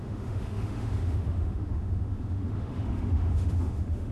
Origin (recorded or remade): remade